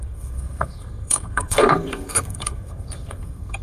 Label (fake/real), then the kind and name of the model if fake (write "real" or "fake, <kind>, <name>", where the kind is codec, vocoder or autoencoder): fake, codec, SNAC